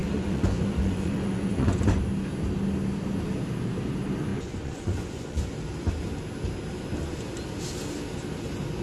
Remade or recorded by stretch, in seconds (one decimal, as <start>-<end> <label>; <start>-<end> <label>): 0.0-2.0 remade; 2.0-4.3 recorded; 4.3-5.5 remade; 5.5-8.8 recorded